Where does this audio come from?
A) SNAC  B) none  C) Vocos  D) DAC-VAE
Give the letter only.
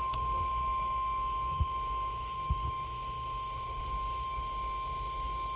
D